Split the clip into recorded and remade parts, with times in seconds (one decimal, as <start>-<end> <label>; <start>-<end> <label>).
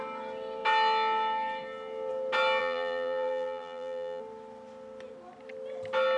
0.0-2.6 recorded; 2.6-4.2 remade; 4.2-6.2 recorded